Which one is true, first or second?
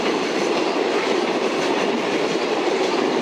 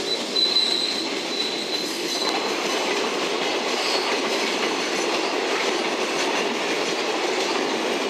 second